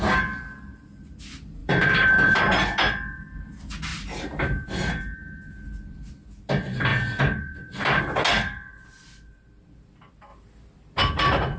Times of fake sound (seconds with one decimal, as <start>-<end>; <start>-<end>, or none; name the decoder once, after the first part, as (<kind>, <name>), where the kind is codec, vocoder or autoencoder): 1.6-2.4 (vocoder, BigVGAN v2); 3.9-5.5

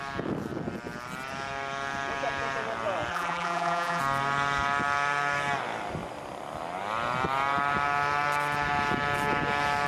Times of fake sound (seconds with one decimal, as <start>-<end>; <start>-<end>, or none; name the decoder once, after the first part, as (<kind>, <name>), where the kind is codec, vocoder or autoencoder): 3.1-4.0 (vocoder, BigVGAN v2)

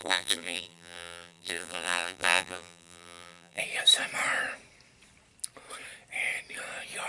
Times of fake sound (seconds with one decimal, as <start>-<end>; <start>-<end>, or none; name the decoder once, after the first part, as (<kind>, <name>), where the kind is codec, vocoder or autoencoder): 0.0-3.6 (vocoder, BigVGAN v2)

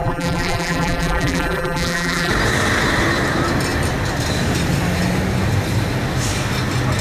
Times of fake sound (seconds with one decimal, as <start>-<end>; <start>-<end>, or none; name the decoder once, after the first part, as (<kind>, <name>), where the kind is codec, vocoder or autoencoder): 0.0-2.3 (vocoder, BigVGAN v2)